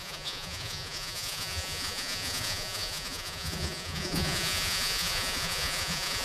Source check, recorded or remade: remade